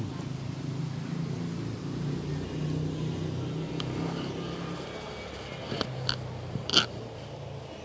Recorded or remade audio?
recorded